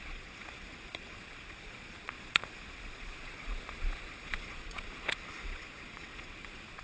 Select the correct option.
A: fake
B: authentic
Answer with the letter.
A